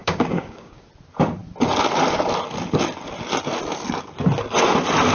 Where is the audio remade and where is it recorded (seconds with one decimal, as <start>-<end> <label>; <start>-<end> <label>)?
0.0-0.9 remade; 0.9-5.1 recorded